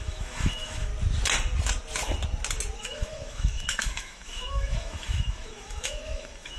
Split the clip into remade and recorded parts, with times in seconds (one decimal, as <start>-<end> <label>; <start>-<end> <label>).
0.0-0.9 remade; 0.9-2.8 recorded; 2.8-6.6 remade